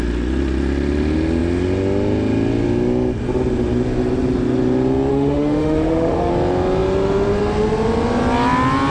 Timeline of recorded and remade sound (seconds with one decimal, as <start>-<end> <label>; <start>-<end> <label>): 0.0-5.1 recorded; 5.1-6.3 remade; 6.3-8.9 recorded